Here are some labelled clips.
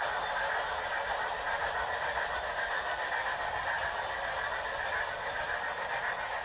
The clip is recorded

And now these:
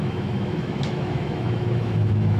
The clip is remade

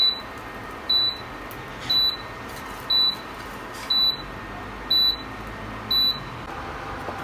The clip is recorded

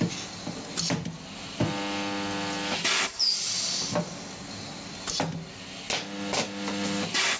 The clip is recorded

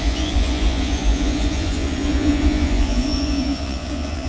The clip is remade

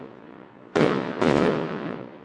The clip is remade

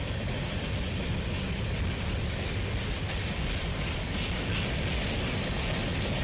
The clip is recorded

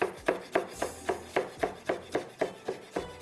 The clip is recorded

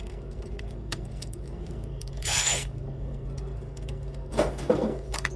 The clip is remade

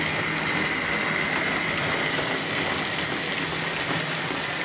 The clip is recorded